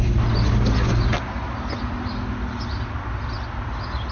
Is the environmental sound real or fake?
real